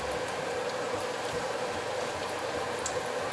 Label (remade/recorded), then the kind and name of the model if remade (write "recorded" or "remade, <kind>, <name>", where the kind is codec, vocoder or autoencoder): remade, vocoder, BigVGAN v2